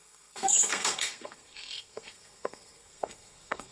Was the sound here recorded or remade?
remade